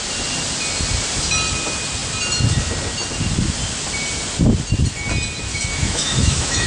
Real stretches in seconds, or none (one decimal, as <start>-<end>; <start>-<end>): 0.0-5.5